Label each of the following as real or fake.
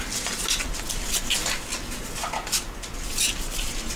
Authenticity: real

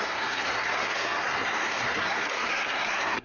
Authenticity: fake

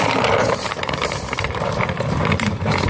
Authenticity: fake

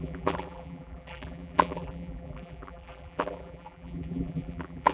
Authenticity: fake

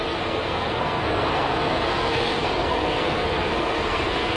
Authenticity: fake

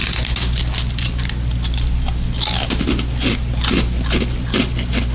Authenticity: real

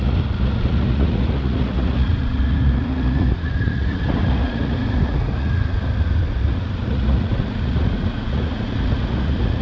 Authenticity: fake